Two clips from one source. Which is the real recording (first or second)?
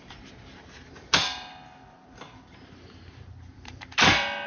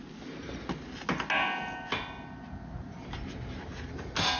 second